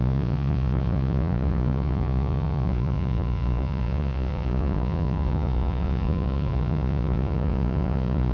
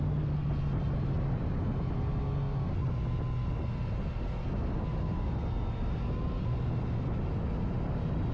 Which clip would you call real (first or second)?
second